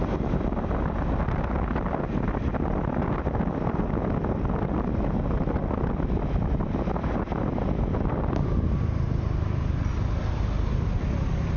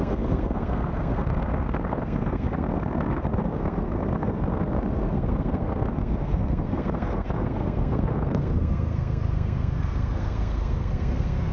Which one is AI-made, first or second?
second